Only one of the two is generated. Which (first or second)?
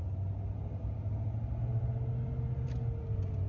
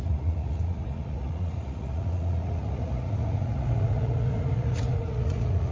second